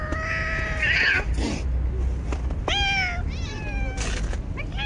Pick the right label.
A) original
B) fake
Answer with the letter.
A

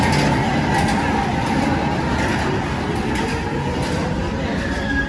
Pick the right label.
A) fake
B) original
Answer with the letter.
B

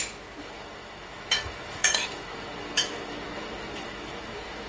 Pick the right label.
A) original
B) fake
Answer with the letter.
B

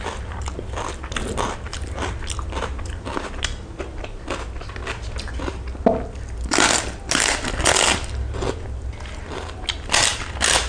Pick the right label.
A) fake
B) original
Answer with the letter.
B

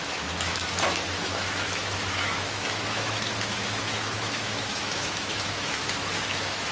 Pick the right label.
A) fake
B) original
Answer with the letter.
A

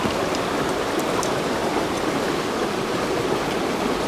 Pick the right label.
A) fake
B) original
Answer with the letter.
B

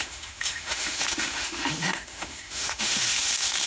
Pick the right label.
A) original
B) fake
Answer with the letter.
B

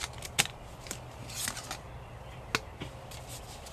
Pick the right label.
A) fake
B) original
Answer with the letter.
B